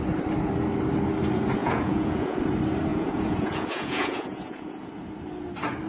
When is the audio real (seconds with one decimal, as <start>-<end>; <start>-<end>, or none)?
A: 0.0-1.6; 2.4-2.9; 4.9-5.9